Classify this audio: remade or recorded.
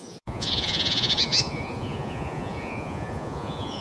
remade